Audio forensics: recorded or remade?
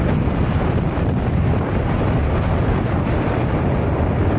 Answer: recorded